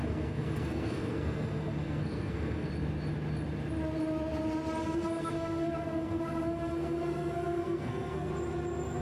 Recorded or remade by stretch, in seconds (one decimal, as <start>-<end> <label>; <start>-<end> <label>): 0.0-2.7 remade; 2.7-4.8 recorded; 4.8-8.3 remade; 8.3-9.0 recorded